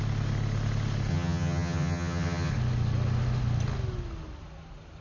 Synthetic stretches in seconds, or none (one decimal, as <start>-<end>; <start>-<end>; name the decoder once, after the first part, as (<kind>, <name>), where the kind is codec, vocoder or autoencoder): 1.1-2.5 (vocoder, HiFi-GAN)